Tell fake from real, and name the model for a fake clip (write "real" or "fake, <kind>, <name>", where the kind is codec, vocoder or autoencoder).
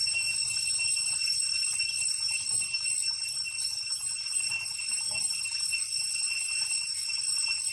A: real